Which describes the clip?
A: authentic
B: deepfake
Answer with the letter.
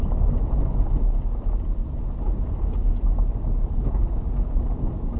A